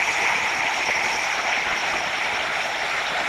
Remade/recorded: remade